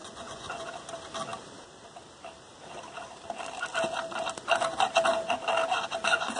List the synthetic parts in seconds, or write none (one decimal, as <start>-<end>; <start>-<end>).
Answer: 0.0-0.7